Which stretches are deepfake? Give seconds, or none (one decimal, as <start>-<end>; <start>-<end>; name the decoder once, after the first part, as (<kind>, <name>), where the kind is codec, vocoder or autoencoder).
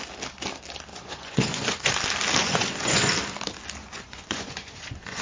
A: 0.9-1.9 (vocoder, Vocos); 2.4-3.1; 3.8-5.2